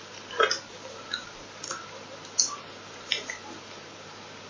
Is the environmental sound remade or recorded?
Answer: recorded